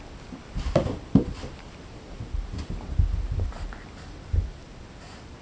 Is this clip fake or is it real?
real